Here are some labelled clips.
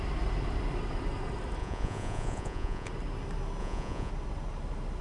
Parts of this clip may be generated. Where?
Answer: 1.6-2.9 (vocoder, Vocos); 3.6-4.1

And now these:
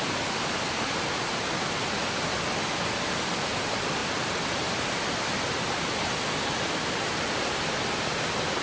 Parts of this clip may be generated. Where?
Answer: none

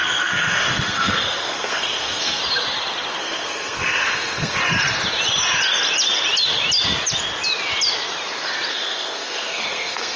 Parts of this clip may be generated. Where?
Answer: 0.0-2.4 (codec, SNAC); 3.2-4.6; 8.7-10.2

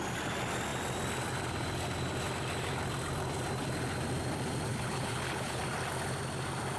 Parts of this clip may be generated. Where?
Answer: 4.7-5.6 (codec, HILCodec)

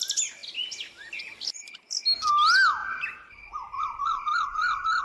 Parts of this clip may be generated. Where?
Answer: none